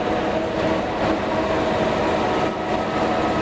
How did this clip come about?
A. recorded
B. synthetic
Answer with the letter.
A